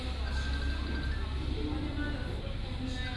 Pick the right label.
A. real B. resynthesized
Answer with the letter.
A